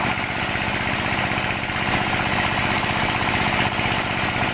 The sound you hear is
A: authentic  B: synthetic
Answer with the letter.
A